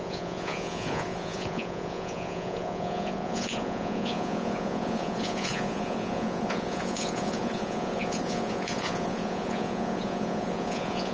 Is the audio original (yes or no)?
no